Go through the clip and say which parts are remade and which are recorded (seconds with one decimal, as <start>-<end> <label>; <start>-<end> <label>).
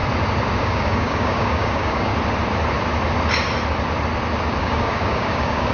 0.0-0.6 recorded; 0.6-2.1 remade; 2.1-4.6 recorded; 4.6-5.7 remade